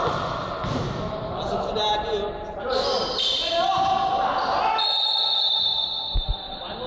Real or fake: real